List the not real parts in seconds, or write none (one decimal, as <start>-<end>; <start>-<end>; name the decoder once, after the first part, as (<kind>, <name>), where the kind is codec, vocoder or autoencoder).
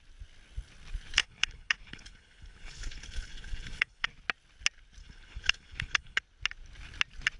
1.2-4.1 (codec, HILCodec); 5.0-6.2